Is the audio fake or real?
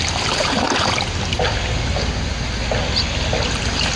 real